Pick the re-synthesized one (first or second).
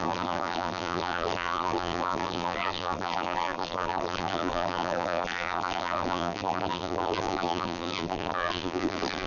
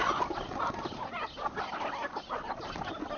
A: first